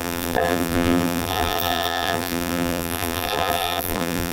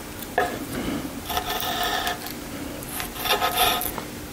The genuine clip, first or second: second